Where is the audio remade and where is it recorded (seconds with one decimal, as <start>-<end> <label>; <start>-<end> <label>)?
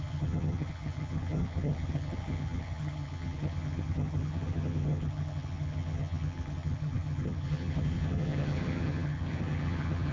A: 0.0-10.1 remade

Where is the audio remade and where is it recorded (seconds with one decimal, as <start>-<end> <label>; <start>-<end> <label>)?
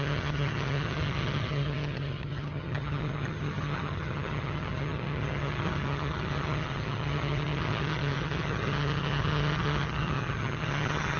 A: 0.0-11.2 remade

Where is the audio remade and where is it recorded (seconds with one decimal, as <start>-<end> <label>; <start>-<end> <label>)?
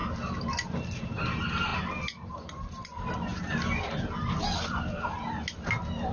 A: 0.0-6.1 recorded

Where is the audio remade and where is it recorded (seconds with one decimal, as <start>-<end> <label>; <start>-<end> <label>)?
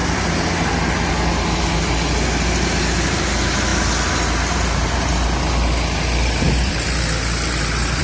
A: 0.0-8.0 recorded